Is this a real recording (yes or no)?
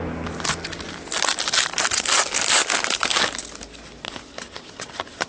yes